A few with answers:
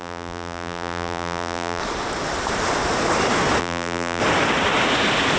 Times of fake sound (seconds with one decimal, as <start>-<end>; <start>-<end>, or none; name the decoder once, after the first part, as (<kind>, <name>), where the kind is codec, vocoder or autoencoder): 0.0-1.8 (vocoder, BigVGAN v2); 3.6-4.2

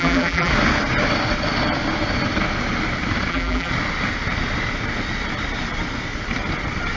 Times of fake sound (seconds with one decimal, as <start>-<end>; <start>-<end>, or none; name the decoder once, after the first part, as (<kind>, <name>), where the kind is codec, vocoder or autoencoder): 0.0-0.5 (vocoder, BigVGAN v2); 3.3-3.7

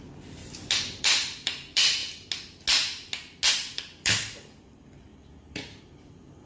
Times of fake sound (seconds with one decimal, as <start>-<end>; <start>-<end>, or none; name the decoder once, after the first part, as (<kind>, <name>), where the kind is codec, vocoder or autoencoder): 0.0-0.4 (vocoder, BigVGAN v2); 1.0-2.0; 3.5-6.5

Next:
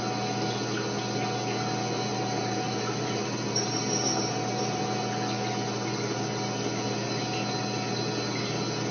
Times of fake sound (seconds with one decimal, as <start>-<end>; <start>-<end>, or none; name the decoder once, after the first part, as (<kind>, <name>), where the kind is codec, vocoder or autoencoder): 2.1-4.8 (vocoder, BigVGAN v2)